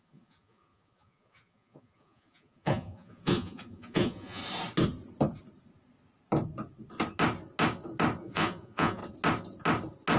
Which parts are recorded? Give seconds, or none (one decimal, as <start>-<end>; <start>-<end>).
4.4-8.2; 9.0-10.2